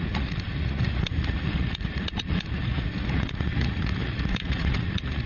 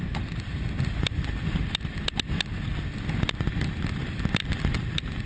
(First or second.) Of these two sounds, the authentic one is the second